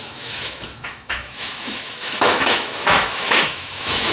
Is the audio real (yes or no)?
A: no